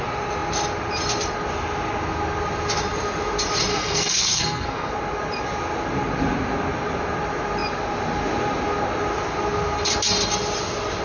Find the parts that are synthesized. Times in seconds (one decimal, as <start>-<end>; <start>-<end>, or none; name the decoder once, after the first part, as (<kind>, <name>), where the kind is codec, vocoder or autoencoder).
3.7-4.9 (codec, SNAC)